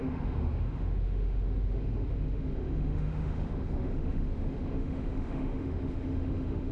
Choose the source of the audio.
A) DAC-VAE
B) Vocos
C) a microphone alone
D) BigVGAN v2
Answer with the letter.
A